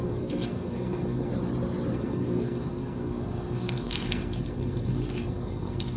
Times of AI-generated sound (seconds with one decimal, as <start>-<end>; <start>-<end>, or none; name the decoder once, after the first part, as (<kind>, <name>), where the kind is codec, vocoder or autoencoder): 0.0-1.3 (codec, SNAC); 1.9-6.0

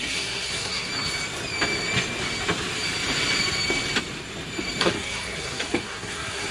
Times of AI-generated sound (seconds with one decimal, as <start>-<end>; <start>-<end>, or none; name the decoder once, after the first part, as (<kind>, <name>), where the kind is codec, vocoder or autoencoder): 0.0-0.9 (codec, SNAC); 4.8-6.5

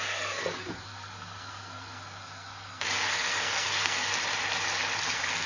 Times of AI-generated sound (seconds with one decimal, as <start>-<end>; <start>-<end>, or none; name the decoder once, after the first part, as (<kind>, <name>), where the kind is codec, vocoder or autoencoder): 0.0-4.1 (codec, SNAC); 5.0-5.5